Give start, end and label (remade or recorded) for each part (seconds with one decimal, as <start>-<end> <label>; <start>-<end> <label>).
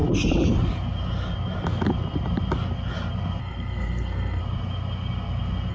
0.0-3.4 recorded; 3.4-4.4 remade; 4.4-5.7 recorded